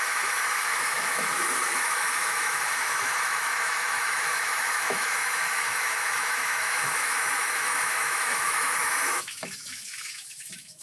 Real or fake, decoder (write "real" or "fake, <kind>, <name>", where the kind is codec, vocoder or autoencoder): fake, autoencoder, DAC-VAE